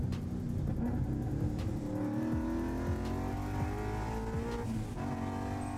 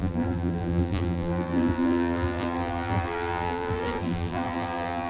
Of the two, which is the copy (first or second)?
second